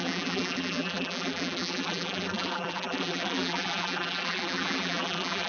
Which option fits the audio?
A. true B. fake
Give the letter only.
B